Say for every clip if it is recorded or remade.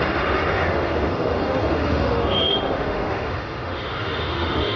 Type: remade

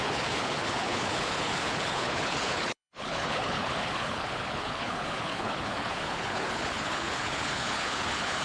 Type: remade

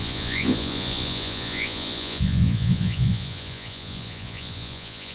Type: remade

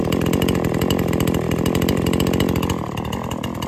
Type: recorded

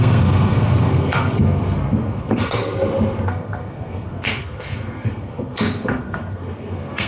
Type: remade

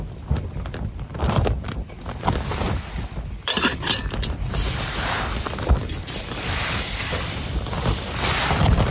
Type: remade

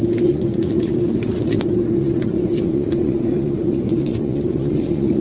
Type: remade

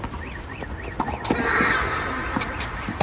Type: recorded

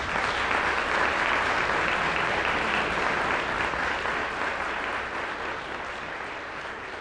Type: recorded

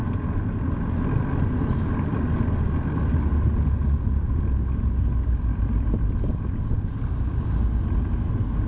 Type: recorded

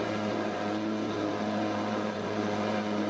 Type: remade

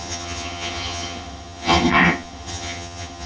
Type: remade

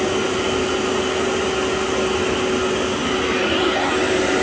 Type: recorded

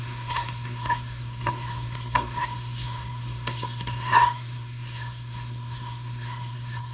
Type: remade